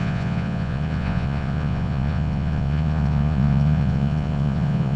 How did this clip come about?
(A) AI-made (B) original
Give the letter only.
A